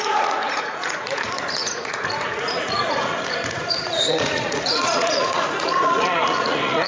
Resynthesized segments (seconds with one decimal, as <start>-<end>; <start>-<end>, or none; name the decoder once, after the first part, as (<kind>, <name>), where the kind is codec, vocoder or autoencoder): 0.0-6.9 (vocoder, Vocos)